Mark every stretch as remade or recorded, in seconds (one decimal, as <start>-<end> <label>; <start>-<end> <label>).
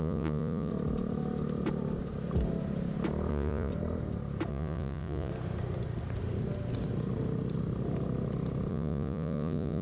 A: 0.0-0.7 remade; 0.7-3.3 recorded; 3.3-3.7 remade; 3.7-4.5 recorded; 4.5-5.3 remade; 5.3-8.7 recorded; 8.7-9.8 remade